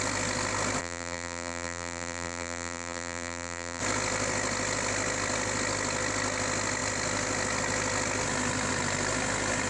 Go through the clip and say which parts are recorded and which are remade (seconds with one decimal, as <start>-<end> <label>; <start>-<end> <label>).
0.0-0.8 recorded; 0.8-3.8 remade; 3.8-9.7 recorded